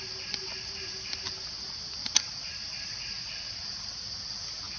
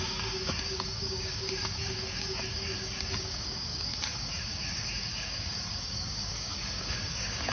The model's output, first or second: second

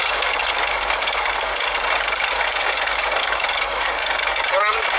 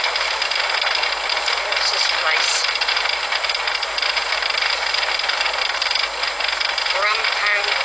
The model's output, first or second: first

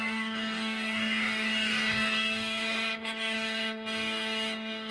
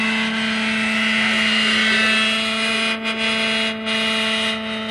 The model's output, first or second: first